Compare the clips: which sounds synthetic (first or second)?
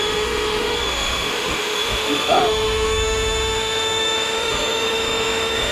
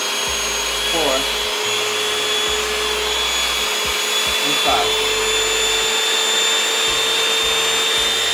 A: first